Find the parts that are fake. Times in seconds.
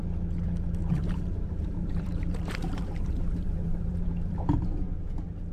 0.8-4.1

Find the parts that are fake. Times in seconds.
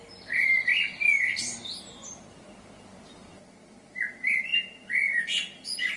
0.0-0.7; 2.8-4.5; 5.2-6.0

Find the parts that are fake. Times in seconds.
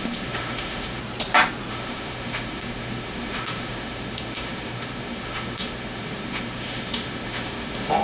0.0-1.0; 1.7-8.0